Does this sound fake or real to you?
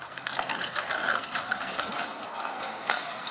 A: fake